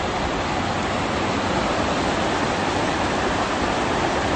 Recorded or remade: recorded